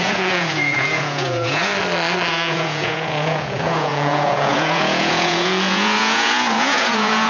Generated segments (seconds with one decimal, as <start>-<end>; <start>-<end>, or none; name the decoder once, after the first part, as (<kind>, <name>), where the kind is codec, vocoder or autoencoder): 0.0-1.7 (vocoder, Vocos); 2.3-7.3